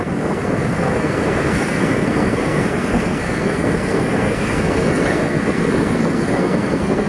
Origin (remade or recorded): remade